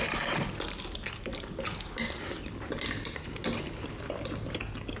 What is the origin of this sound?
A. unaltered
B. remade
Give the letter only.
A